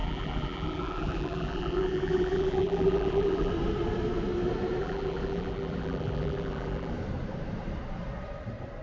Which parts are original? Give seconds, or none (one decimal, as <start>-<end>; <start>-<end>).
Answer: 3.5-4.8; 6.9-8.8